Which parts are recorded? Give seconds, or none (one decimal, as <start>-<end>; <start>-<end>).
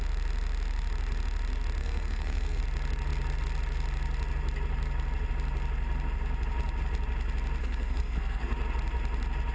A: 0.0-1.8; 2.6-7.6; 8.5-9.5